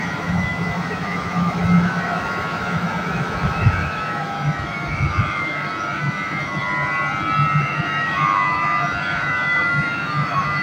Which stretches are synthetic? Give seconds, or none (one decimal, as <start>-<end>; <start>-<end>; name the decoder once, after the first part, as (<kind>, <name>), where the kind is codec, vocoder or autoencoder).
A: 0.0-6.6 (autoencoder, DAC-VAE); 7.6-10.6